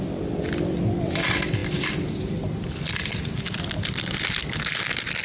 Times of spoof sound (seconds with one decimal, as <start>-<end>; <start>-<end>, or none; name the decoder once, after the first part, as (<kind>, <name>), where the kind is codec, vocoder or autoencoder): 0.0-1.6 (vocoder, BigVGAN v2); 4.7-5.2